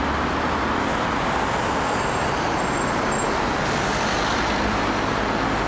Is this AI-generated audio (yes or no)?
no